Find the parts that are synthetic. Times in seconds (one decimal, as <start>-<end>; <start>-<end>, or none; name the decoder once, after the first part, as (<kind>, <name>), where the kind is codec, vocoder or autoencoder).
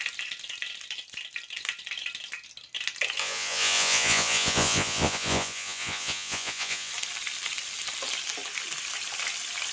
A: 3.2-6.9 (vocoder, Vocos)